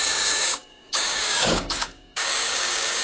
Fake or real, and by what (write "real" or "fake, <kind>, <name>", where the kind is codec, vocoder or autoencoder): fake, codec, DAC